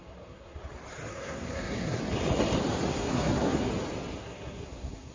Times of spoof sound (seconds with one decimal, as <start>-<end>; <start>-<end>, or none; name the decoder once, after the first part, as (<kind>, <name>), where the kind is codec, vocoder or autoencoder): 0.0-0.6 (codec, SNAC); 1.1-2.0; 2.9-3.7; 4.2-5.1